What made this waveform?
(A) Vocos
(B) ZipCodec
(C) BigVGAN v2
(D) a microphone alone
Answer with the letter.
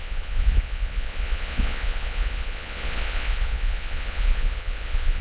A